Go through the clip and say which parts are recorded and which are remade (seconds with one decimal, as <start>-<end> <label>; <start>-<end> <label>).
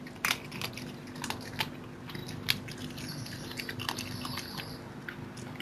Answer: 0.0-5.6 recorded